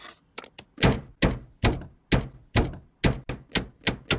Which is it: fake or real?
real